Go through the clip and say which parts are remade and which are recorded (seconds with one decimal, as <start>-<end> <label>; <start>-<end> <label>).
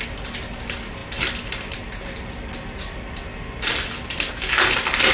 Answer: 0.0-5.1 recorded